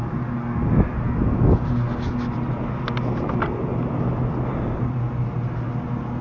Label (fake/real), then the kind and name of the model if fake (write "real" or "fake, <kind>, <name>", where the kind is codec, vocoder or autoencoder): real